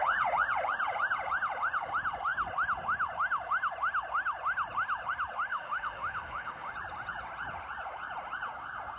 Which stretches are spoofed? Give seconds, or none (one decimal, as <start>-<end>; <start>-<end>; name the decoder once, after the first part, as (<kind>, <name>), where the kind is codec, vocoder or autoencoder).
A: 5.5-6.7 (autoencoder, DAC-VAE)